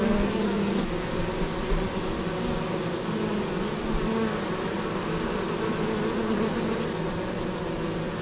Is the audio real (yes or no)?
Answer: yes